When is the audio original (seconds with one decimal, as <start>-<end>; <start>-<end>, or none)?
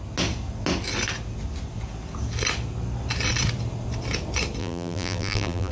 0.0-4.6